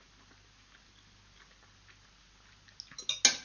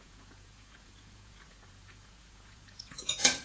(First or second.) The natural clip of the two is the first